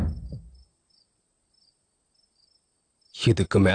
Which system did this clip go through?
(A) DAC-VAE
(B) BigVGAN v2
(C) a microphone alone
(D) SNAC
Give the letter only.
C